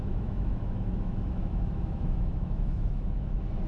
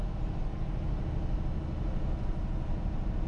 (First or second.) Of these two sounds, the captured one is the second